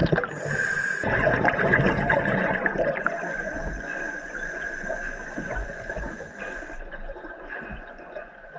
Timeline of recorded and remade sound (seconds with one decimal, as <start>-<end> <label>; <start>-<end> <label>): 0.0-1.0 recorded; 1.0-8.6 remade